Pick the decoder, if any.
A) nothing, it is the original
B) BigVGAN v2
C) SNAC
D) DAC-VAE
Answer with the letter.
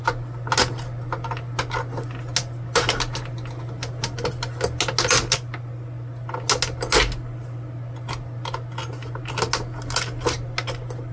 A